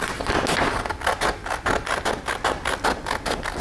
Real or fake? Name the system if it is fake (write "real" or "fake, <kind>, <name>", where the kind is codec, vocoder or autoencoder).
real